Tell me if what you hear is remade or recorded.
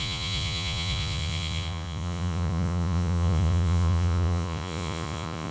remade